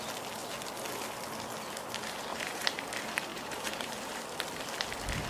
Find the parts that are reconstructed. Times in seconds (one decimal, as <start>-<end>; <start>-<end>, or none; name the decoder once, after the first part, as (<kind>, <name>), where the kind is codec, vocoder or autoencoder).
2.3-2.9 (vocoder, BigVGAN v2); 3.3-4.2